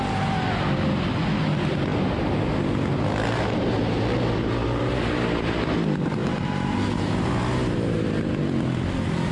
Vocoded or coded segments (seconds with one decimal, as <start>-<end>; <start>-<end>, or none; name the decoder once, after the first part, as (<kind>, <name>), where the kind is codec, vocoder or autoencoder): 6.2-8.4 (vocoder, BigVGAN v2)